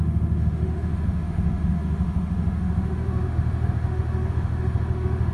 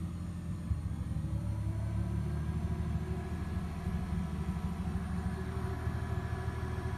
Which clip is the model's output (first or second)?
first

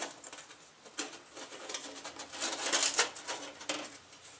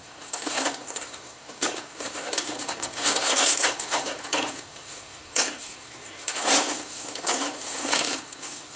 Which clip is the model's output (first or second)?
second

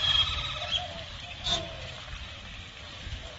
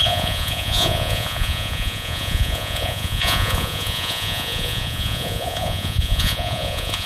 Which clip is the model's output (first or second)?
second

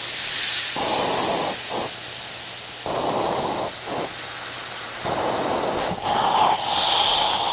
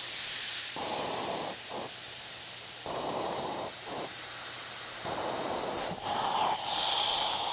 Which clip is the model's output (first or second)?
second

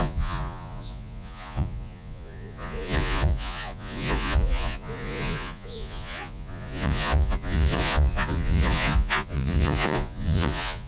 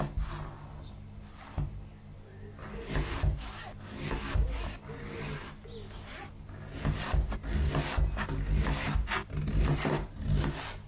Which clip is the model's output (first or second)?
first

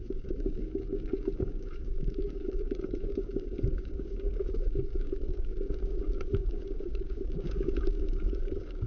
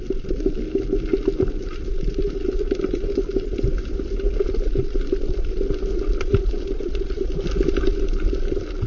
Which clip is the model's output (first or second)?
first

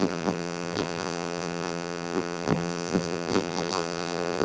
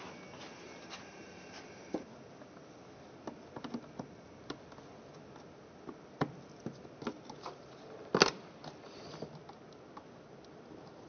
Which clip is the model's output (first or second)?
first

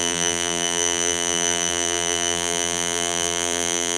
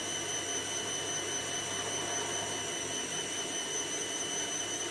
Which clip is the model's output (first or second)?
first